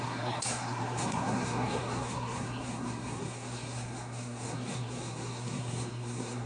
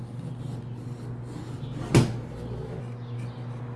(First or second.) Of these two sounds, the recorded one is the second